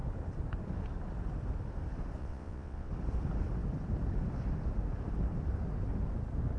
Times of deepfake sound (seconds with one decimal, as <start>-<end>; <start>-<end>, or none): 2.2-2.9